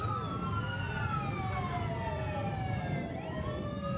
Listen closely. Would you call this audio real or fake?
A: real